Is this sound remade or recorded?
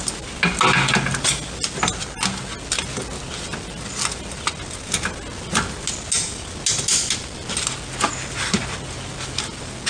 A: recorded